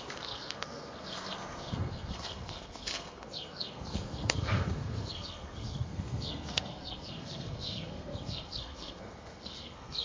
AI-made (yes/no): yes